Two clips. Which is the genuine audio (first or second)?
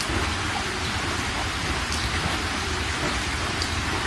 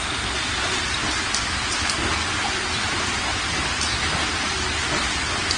second